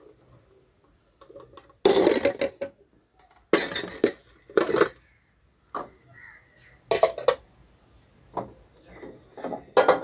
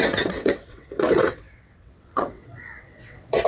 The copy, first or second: second